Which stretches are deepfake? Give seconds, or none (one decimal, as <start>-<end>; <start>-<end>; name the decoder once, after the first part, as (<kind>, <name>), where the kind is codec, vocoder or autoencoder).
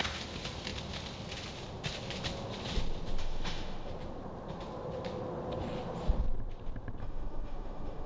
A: 3.2-3.9 (autoencoder, DAC-VAE); 7.0-8.1